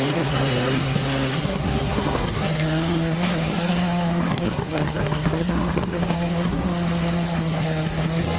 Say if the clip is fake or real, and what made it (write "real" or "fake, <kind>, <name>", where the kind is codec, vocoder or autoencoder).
fake, codec, SNAC